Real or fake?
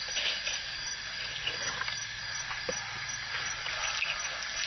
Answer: real